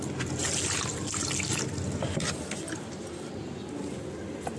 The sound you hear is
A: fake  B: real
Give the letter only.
B